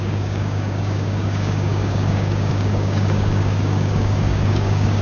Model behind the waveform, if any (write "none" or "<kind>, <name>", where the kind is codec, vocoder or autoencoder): codec, DAC